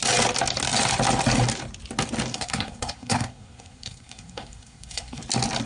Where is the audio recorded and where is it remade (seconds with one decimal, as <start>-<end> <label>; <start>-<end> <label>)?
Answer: 0.0-2.3 recorded; 2.3-5.2 remade; 5.2-5.7 recorded

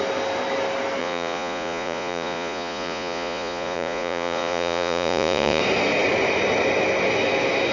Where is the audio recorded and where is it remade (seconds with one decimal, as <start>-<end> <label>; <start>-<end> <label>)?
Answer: 0.0-1.0 recorded; 1.0-5.6 remade; 5.6-7.7 recorded

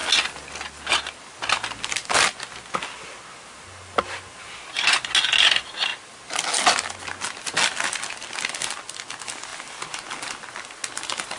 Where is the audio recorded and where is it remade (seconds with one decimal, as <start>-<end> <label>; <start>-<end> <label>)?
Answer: 0.0-11.4 recorded

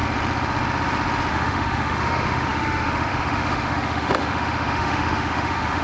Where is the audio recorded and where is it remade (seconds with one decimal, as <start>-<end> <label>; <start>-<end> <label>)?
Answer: 0.0-1.3 recorded; 1.3-5.8 remade

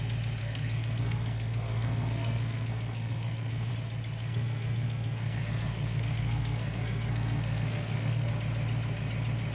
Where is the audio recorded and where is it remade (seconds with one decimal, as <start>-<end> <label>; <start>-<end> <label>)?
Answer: 0.0-0.4 recorded; 0.4-3.7 remade; 3.7-4.2 recorded; 4.2-8.3 remade; 8.3-9.5 recorded

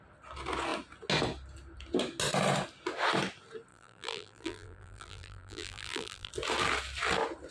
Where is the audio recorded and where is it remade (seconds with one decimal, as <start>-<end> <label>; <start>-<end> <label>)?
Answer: 0.0-3.7 recorded; 3.7-6.3 remade; 6.3-7.5 recorded

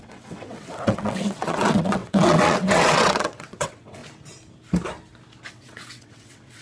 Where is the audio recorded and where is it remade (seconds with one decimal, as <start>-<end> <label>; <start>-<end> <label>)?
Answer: 0.0-4.0 remade; 4.0-5.5 recorded; 5.5-6.6 remade